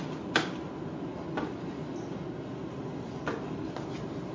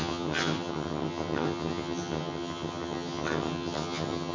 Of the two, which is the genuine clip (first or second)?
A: first